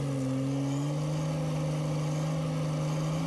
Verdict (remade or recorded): recorded